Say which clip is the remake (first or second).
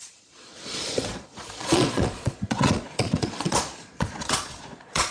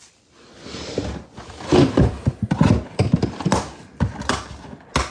first